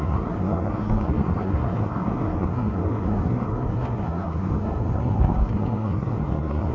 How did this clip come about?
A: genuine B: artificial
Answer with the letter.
B